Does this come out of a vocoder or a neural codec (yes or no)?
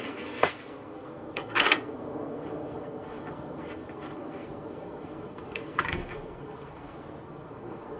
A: yes